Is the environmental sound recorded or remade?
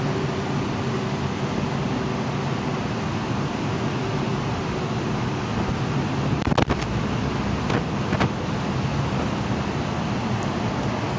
recorded